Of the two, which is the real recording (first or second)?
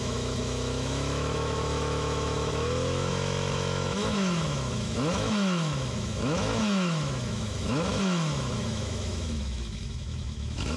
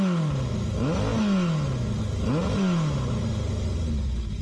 second